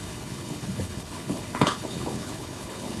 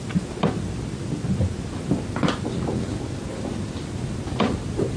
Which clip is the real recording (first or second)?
second